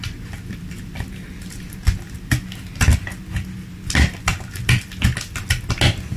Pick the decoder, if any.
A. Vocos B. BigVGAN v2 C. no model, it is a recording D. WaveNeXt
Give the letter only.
C